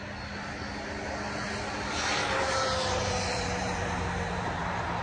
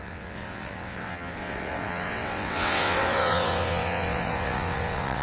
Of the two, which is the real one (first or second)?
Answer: first